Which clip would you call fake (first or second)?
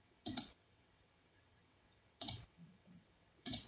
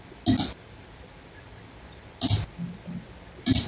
first